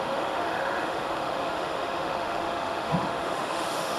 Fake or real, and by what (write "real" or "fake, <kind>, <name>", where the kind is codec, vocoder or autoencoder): fake, autoencoder, DAC-VAE